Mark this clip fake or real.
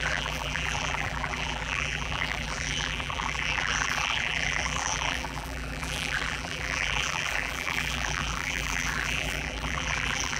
fake